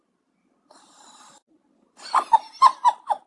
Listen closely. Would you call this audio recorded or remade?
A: recorded